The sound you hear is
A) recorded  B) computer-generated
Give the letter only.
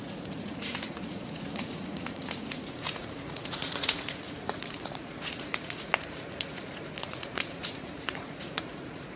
B